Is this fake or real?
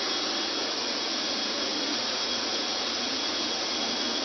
fake